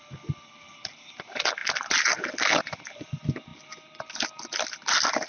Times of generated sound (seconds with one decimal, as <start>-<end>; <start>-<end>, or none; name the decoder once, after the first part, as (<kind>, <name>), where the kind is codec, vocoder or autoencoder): none